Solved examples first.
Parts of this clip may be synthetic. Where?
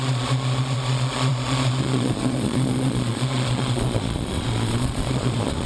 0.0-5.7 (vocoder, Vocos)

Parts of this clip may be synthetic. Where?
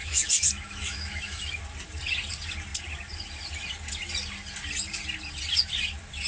0.0-1.6 (autoencoder, DAC-VAE)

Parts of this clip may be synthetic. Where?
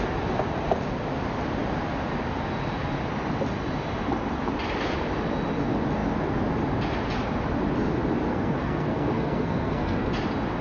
8.3-10.1 (codec, SNAC)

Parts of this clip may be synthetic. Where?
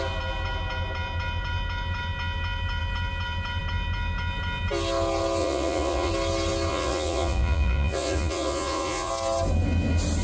5.4-6.1 (vocoder, Vocos); 6.7-9.1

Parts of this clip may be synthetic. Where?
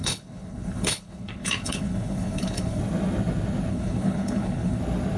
0.0-2.8 (codec, HILCodec); 3.7-4.8